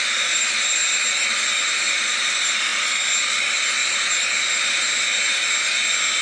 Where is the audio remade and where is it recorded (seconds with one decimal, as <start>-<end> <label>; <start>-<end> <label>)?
0.0-0.8 remade; 0.8-1.9 recorded; 1.9-2.7 remade; 2.7-6.2 recorded